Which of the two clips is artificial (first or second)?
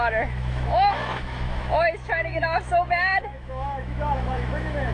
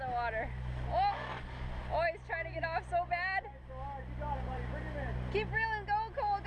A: first